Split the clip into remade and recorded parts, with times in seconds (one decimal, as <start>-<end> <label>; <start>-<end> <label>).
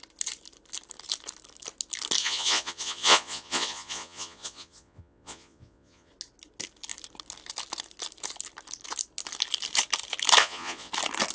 0.0-2.2 recorded; 2.2-6.1 remade; 6.1-10.4 recorded; 10.4-10.9 remade; 10.9-11.3 recorded